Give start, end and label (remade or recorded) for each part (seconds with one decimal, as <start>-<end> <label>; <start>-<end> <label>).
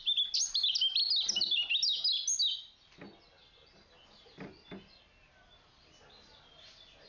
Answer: 0.0-7.1 recorded